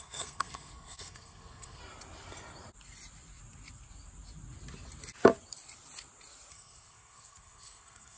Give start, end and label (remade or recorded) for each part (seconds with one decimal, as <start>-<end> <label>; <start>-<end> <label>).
0.0-1.8 remade; 1.8-6.5 recorded; 6.5-8.2 remade